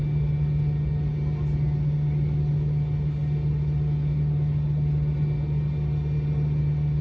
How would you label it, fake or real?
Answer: real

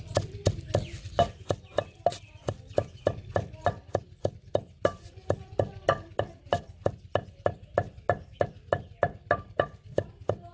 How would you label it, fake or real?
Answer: real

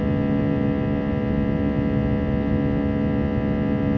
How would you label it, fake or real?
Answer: real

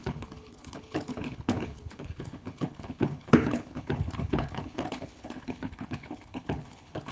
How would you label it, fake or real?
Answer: fake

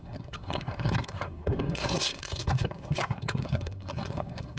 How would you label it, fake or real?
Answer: fake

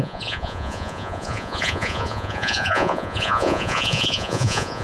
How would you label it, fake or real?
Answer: fake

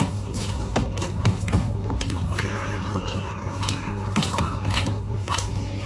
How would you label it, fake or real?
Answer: fake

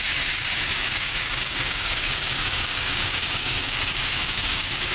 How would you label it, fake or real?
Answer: fake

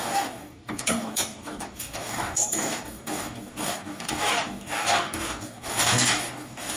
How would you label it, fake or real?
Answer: fake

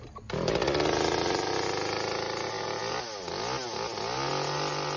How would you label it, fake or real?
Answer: real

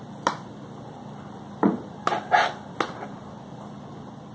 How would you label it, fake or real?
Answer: real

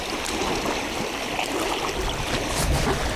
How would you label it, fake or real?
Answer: real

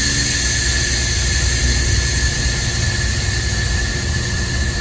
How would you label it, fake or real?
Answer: real